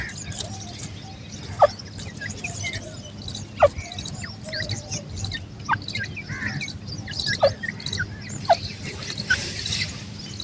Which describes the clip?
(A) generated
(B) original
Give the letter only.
B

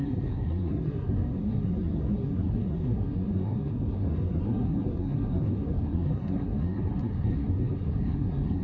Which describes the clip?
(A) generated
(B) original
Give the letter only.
A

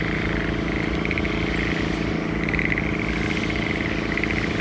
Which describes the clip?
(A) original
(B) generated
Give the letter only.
A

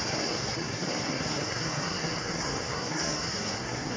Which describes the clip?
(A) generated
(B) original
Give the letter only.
A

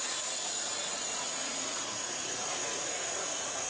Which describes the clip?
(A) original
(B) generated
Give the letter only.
B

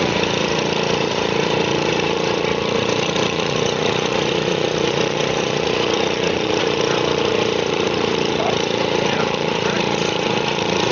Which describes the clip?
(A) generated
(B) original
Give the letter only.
A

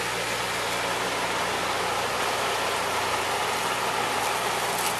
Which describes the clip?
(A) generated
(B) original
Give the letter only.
B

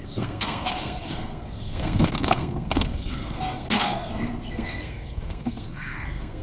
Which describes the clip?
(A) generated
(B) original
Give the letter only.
A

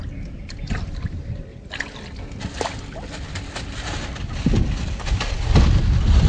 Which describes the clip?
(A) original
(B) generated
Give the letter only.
A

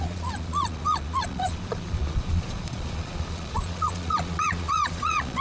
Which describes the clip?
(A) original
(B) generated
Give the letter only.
B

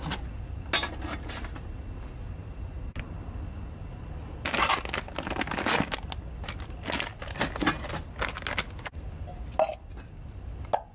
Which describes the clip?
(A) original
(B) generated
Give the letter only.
A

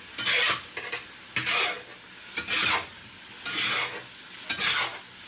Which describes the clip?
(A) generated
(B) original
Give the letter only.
B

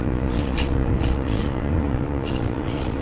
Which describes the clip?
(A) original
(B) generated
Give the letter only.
B